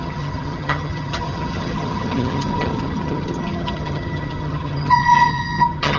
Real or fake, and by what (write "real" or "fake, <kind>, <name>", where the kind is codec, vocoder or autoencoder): fake, vocoder, HiFi-GAN